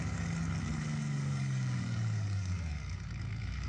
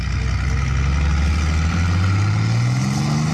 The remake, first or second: first